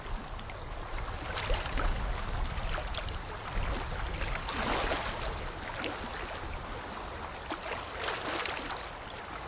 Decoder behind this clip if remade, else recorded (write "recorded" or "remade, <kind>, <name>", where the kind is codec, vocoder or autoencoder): recorded